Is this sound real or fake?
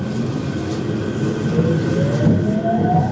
real